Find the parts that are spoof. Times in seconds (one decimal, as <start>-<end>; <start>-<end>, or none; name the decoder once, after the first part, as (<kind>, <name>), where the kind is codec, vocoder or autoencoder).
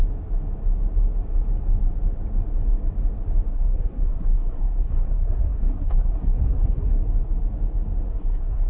3.5-7.0 (codec, SNAC); 8.1-8.7